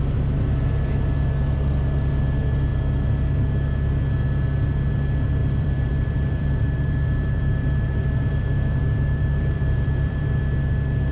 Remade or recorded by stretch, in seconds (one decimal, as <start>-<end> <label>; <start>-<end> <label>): 0.0-5.4 recorded; 5.4-10.4 remade; 10.4-11.1 recorded